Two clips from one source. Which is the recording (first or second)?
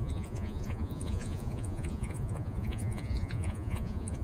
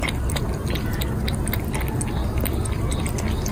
second